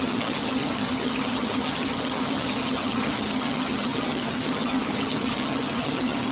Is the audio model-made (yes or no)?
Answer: yes